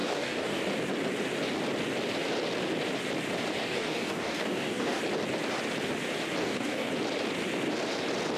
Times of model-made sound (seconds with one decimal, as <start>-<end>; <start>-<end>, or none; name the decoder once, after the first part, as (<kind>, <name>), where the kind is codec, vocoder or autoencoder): 0.0-0.6 (codec, DAC); 3.6-5.0; 6.4-6.9